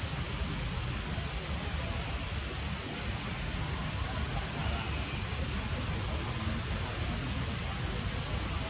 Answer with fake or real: real